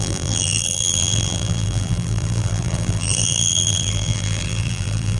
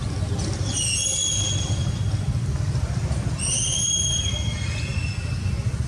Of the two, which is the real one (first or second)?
second